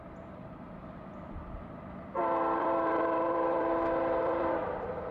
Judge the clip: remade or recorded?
remade